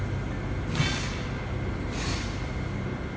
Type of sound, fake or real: real